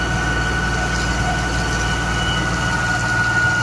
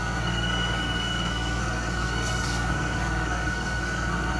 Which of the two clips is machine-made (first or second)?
second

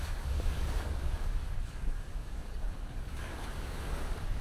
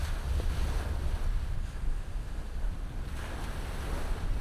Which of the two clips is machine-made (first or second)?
first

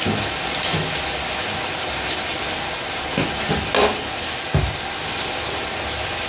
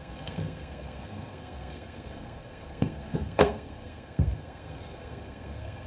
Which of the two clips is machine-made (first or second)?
second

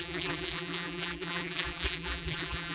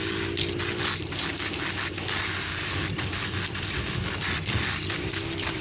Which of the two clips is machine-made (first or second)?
first